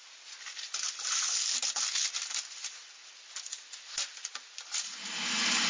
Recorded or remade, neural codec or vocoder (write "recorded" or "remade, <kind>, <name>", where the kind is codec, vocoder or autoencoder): recorded